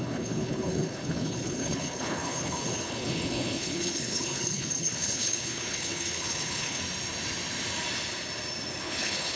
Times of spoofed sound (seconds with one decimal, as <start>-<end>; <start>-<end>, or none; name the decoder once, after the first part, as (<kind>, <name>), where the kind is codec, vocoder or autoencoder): 0.0-6.8 (codec, HILCodec); 8.8-9.4